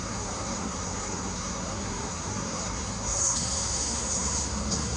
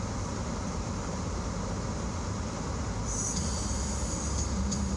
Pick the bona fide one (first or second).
second